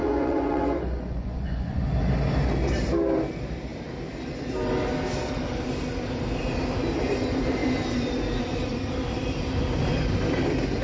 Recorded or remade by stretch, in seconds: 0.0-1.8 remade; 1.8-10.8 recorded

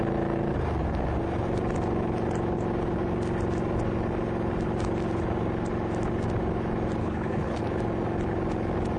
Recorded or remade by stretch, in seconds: 0.0-7.0 recorded; 7.0-7.6 remade; 7.6-9.0 recorded

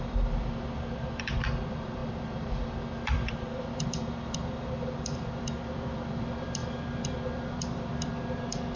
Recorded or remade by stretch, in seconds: 0.0-8.8 remade

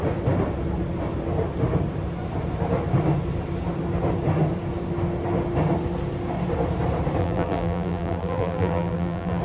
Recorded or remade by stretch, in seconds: 0.0-7.2 recorded; 7.2-9.4 remade

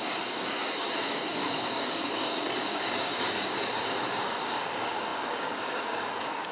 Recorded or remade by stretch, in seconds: 0.0-6.5 remade

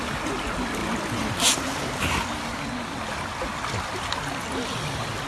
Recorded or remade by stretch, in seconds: 0.0-5.3 recorded

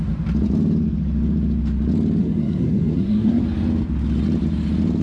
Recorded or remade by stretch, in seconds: 0.0-2.2 recorded; 2.2-3.4 remade; 3.4-5.0 recorded